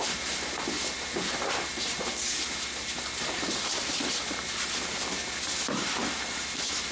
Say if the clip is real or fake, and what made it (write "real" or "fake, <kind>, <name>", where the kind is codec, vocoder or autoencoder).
fake, vocoder, BigVGAN v2